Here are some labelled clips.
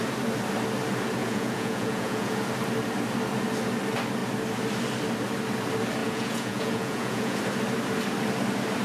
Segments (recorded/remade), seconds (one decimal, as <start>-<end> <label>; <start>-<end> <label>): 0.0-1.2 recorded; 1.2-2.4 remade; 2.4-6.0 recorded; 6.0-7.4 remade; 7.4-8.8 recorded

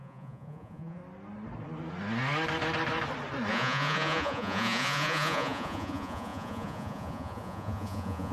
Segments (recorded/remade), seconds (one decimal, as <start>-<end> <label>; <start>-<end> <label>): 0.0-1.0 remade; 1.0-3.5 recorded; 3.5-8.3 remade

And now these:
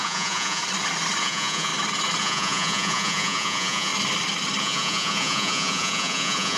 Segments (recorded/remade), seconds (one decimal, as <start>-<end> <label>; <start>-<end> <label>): 0.0-0.6 remade; 0.6-1.2 recorded; 1.2-1.7 remade; 1.7-2.2 recorded; 2.2-3.9 remade; 3.9-4.6 recorded; 4.6-6.6 remade